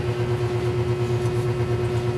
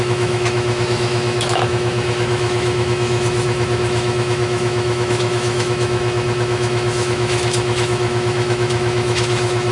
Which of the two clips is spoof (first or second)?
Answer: second